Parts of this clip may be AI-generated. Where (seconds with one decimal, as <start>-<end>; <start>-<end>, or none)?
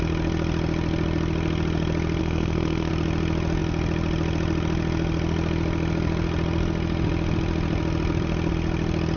2.2-2.9